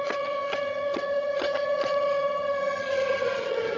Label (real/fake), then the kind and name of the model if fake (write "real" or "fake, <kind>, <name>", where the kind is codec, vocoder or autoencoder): fake, vocoder, HiFi-GAN